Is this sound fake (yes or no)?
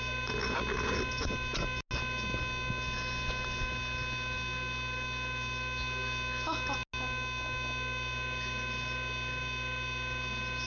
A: no